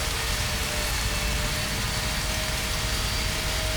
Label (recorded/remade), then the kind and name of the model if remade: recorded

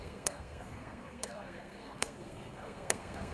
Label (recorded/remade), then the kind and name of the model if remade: remade, codec, SNAC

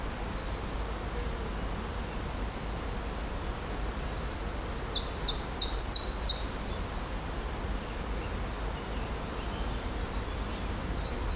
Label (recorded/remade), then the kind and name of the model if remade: recorded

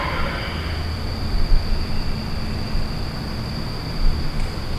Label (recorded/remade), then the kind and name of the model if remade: recorded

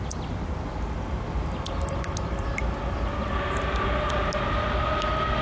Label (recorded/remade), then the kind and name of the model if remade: recorded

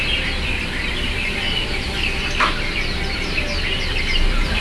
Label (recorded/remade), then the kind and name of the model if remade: recorded